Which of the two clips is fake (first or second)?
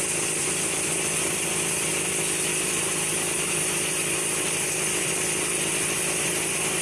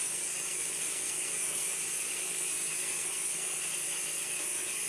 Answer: second